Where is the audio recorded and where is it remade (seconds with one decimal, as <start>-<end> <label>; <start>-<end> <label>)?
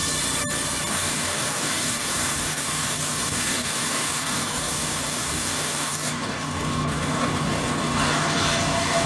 0.0-0.9 recorded; 0.9-9.1 remade